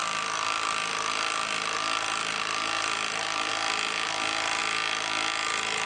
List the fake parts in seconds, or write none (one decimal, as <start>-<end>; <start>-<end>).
0.0-3.5; 4.6-5.9